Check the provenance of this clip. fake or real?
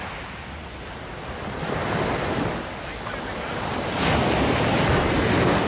real